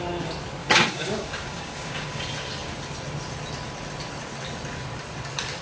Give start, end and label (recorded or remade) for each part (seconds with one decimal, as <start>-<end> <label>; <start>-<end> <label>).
0.0-0.6 recorded; 0.6-2.2 remade; 2.2-5.6 recorded